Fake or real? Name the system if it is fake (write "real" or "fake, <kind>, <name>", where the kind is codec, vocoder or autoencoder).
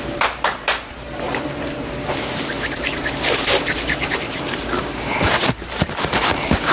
fake, vocoder, BigVGAN v2